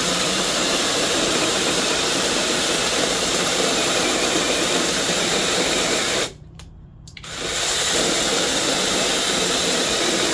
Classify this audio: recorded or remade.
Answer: remade